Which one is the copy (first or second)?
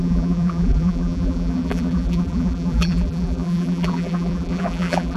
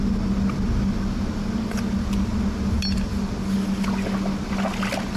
first